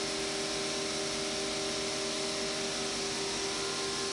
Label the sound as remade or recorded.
recorded